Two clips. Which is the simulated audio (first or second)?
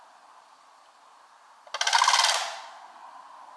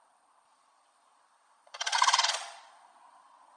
second